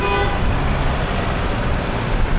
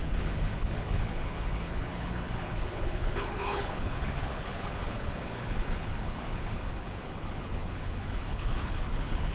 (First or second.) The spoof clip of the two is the second